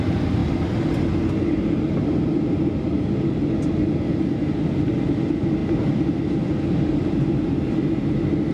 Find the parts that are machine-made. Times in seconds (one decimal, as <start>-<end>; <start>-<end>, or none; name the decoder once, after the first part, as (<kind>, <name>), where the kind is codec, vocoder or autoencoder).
none